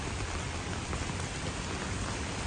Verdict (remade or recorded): remade